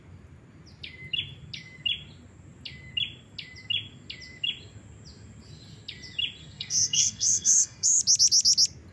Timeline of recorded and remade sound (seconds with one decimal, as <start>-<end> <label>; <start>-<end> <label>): 0.0-6.4 recorded; 6.4-8.0 remade; 8.0-8.9 recorded